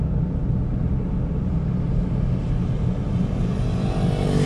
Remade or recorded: recorded